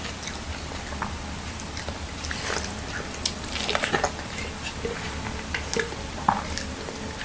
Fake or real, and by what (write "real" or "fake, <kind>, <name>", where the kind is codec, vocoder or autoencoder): real